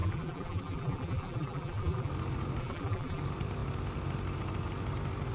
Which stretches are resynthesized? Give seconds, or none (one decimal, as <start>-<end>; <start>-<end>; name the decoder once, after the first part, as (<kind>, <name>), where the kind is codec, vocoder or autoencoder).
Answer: 0.0-2.1 (vocoder, BigVGAN v2); 2.6-3.2